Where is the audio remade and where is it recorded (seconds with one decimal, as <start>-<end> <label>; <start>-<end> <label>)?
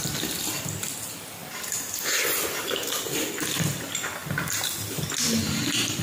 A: 0.0-6.0 recorded